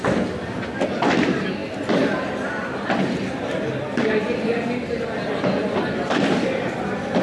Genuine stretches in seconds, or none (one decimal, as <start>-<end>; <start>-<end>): 0.0-7.2